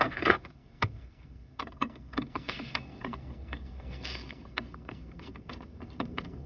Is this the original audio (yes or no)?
no